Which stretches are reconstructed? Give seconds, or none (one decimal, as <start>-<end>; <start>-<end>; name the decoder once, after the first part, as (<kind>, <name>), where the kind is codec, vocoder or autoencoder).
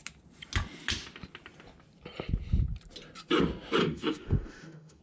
3.8-5.0 (autoencoder, DAC-VAE)